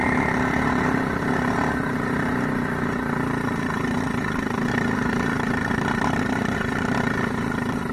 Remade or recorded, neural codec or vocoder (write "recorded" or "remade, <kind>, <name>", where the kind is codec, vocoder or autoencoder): recorded